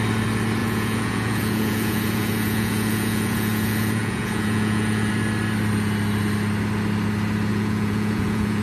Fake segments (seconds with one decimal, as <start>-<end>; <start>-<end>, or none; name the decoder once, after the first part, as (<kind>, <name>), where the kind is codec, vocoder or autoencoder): 0.6-5.1 (vocoder, Vocos); 7.5-8.6